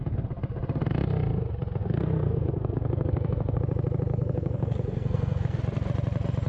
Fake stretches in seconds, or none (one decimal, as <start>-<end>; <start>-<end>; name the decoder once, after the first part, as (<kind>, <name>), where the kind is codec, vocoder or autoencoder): 1.8-3.6 (codec, SNAC); 4.1-5.6